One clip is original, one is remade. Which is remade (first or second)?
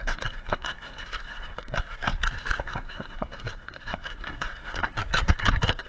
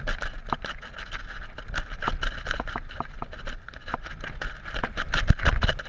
first